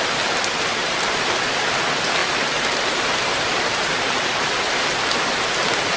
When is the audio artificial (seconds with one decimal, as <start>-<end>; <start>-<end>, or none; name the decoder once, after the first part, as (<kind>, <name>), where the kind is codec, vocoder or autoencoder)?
0.7-1.8 (vocoder, BigVGAN v2); 2.2-5.4